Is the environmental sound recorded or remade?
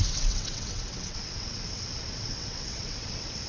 remade